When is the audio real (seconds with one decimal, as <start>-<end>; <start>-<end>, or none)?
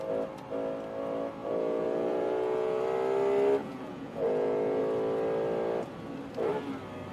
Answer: 0.0-1.4; 2.8-3.6; 4.8-7.1